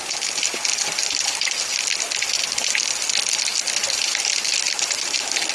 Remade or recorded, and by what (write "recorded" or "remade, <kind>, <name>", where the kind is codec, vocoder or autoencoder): recorded